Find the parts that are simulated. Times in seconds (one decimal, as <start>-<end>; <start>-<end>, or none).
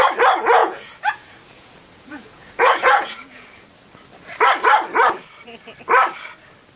0.6-3.7